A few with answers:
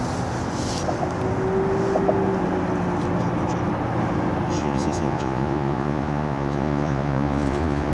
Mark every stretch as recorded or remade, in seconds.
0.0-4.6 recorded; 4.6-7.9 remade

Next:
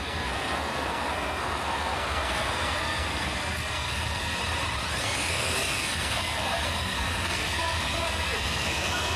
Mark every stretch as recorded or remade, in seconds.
0.0-4.4 remade; 4.4-5.0 recorded; 5.0-9.2 remade

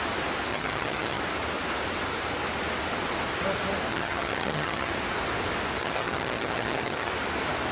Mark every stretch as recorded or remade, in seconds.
0.0-0.5 recorded; 0.5-1.2 remade; 1.2-3.9 recorded; 3.9-4.9 remade; 4.9-5.8 recorded; 5.8-7.1 remade; 7.1-7.7 recorded

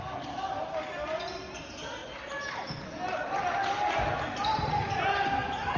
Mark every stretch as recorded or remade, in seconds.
0.0-4.5 recorded; 4.5-5.3 remade; 5.3-5.8 recorded